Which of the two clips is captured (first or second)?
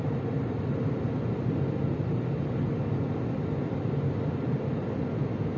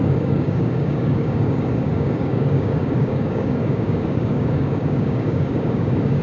first